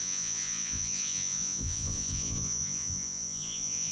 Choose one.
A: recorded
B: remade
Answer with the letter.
B